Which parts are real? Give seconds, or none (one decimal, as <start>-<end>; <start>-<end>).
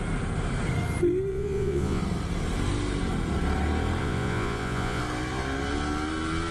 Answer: 0.0-1.3; 2.0-4.0; 5.0-6.5